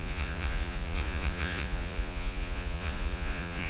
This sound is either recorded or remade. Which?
remade